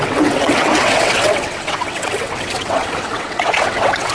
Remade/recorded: remade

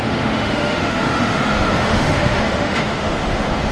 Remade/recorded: remade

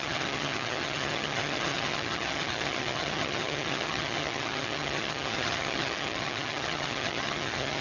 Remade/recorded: remade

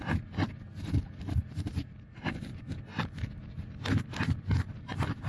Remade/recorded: recorded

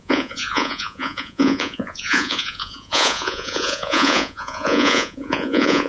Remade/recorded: remade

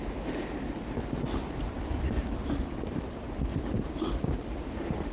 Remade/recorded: recorded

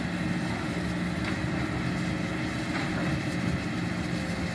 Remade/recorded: recorded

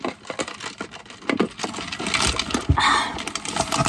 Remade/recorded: recorded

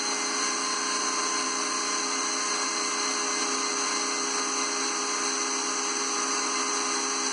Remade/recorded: recorded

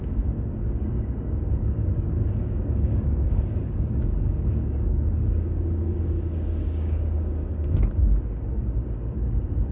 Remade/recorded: remade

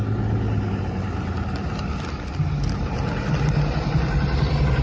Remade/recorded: recorded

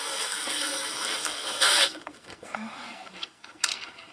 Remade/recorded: remade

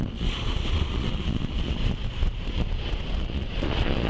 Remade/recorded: remade